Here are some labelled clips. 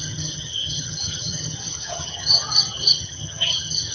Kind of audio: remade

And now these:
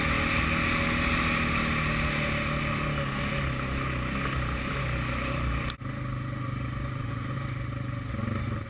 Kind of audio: recorded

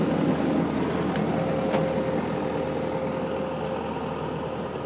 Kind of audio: recorded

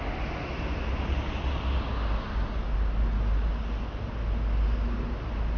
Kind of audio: recorded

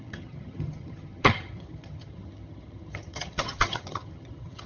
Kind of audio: remade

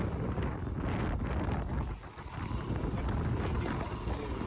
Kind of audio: recorded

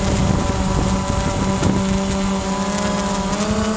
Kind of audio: recorded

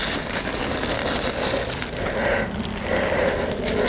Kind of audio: recorded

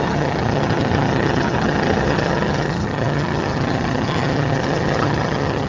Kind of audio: remade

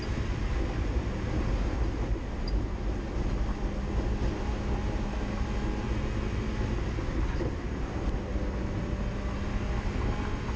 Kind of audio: recorded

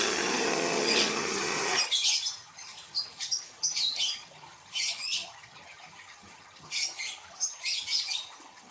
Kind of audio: remade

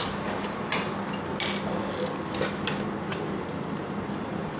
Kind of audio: recorded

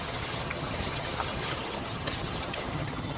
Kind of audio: remade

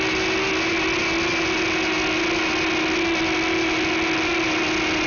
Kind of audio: recorded